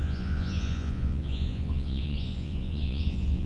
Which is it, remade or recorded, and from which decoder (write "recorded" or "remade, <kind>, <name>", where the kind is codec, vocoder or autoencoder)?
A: remade, vocoder, Vocos